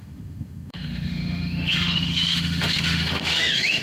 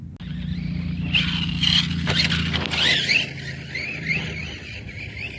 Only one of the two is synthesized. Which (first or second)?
first